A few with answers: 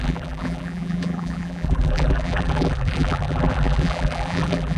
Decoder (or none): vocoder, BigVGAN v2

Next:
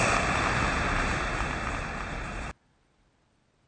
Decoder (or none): none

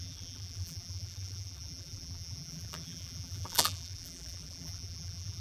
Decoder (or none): vocoder, BigVGAN v2